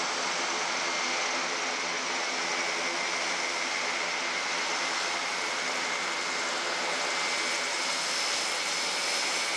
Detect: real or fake real